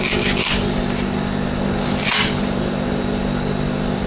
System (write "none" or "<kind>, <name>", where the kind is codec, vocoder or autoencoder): none